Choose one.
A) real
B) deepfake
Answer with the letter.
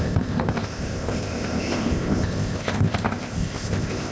B